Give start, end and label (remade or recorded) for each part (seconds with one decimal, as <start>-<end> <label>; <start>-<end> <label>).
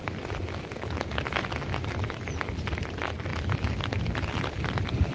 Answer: 0.0-5.1 recorded